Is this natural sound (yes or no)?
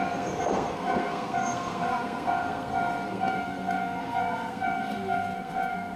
no